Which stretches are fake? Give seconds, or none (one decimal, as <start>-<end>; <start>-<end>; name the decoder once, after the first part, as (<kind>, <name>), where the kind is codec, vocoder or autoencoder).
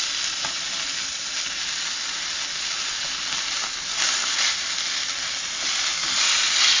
none